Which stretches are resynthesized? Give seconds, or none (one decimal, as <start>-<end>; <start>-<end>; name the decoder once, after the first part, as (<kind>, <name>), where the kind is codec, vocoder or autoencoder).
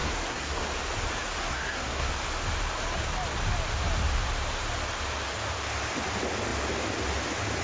0.0-0.6 (codec, SNAC); 1.4-2.1